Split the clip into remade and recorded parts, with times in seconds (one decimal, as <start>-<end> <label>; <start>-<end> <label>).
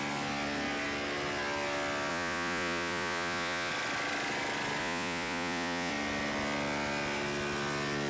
0.0-2.1 recorded; 2.1-3.7 remade; 3.7-4.8 recorded; 4.8-5.9 remade; 5.9-8.1 recorded